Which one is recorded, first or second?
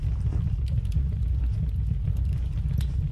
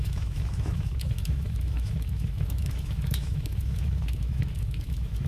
first